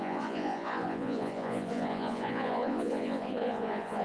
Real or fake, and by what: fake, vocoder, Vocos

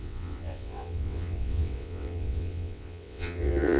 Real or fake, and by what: fake, vocoder, WaveNeXt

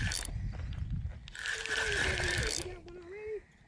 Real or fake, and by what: real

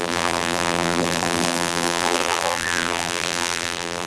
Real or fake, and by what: fake, vocoder, BigVGAN v2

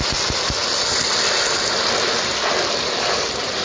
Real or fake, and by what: real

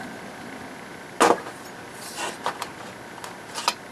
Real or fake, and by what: real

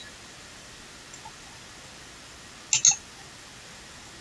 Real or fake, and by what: real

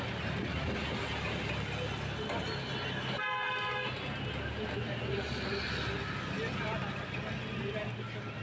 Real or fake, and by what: real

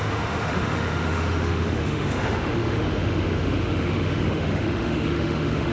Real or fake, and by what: fake, autoencoder, DAC-VAE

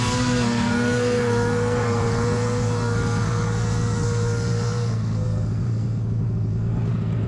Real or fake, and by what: fake, codec, SNAC